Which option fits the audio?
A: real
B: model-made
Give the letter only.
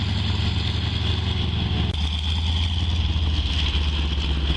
A